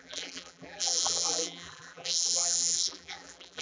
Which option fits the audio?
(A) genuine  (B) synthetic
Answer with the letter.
B